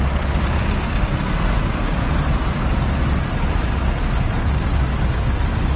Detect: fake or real real